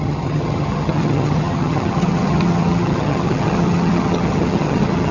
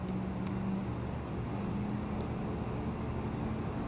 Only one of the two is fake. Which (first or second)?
first